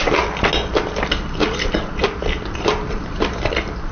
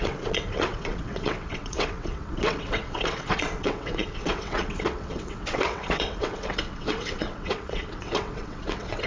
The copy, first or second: second